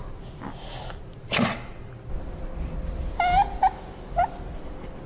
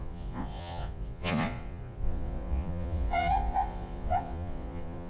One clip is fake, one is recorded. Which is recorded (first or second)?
first